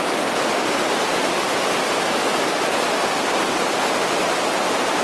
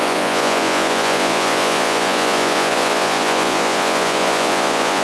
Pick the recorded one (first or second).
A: first